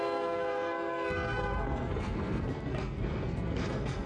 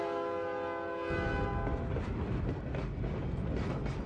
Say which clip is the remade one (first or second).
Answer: first